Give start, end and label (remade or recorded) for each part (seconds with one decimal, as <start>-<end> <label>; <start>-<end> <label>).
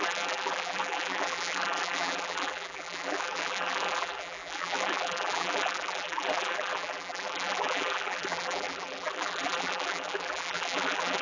0.0-11.2 remade